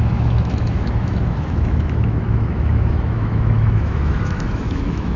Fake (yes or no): yes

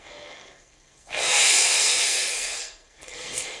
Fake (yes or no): yes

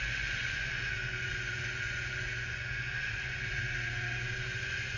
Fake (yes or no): yes